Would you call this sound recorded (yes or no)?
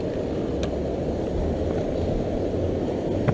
yes